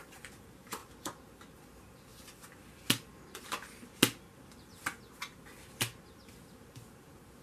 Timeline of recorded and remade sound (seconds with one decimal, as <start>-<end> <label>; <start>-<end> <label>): 0.0-0.8 remade; 0.8-1.6 recorded; 1.6-2.1 remade; 2.1-6.5 recorded; 6.5-7.4 remade